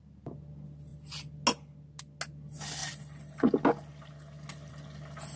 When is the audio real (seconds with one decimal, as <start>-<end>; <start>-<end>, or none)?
0.0-5.4